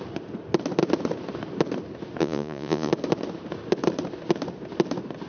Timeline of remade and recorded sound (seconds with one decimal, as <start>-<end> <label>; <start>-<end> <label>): 0.0-2.2 recorded; 2.2-2.9 remade; 2.9-5.3 recorded